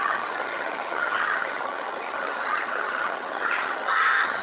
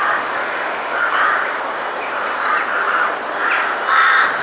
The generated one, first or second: first